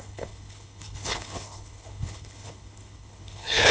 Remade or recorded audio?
remade